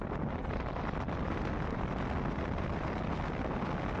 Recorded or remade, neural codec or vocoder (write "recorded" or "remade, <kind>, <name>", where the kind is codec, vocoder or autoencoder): recorded